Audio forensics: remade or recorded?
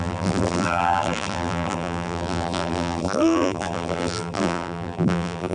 remade